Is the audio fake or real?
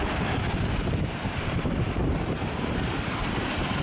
fake